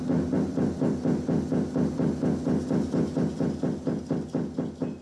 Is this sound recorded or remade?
recorded